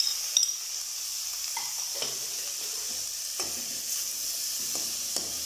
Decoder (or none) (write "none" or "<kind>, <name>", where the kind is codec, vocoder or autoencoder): none